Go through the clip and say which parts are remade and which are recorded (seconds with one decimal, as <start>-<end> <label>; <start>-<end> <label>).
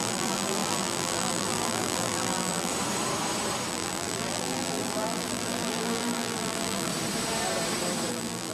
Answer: 0.0-2.7 remade; 2.7-3.7 recorded; 3.7-6.9 remade; 6.9-8.1 recorded; 8.1-8.5 remade